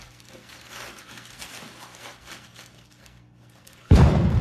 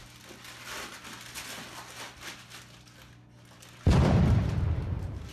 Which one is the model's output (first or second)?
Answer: first